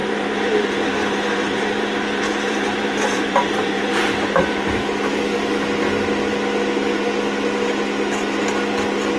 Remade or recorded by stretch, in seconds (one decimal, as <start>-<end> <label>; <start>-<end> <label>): 0.0-5.2 remade; 5.2-9.2 recorded